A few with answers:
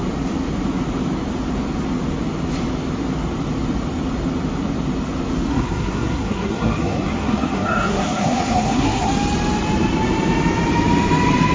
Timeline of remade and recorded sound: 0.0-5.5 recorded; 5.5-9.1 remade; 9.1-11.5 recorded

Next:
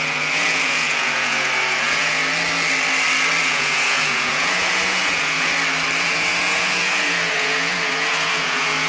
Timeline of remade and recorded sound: 0.0-2.2 remade; 2.2-3.4 recorded; 3.4-5.5 remade; 5.5-6.0 recorded; 6.0-8.9 remade

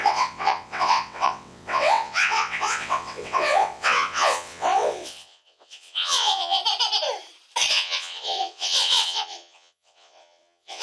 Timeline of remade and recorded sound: 0.0-6.6 remade; 6.6-7.7 recorded; 7.7-10.8 remade

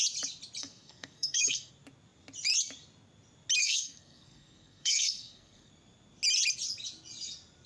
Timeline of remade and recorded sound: 0.0-0.6 recorded; 0.6-1.7 remade; 1.7-3.6 recorded; 3.6-5.7 remade; 5.7-7.7 recorded

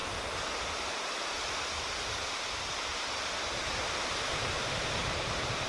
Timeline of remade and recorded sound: 0.0-3.4 recorded; 3.4-5.7 remade

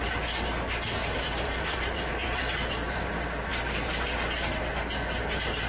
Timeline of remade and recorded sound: 0.0-1.0 recorded; 1.0-3.1 remade; 3.1-5.7 recorded

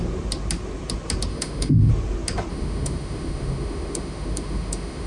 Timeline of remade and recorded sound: 0.0-1.3 recorded; 1.3-1.9 remade; 1.9-2.5 recorded; 2.5-5.1 remade